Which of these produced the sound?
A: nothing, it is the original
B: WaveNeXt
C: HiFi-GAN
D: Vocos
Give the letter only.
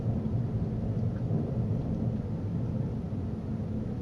A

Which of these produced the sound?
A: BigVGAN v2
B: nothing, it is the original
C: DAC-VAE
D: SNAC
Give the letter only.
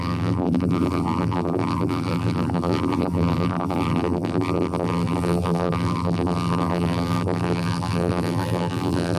A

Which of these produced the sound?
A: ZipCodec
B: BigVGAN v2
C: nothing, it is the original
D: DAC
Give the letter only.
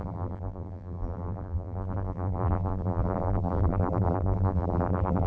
B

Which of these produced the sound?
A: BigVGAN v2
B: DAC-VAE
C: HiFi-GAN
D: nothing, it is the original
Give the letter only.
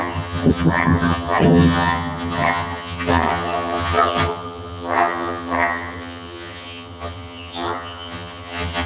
C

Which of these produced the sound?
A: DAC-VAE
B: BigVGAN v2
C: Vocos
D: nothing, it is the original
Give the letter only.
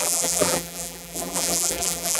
B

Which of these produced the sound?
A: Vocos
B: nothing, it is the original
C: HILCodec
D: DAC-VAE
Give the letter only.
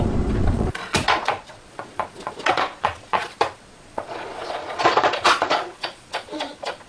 A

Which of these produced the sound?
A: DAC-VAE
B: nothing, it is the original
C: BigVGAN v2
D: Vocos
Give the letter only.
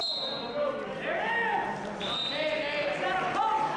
B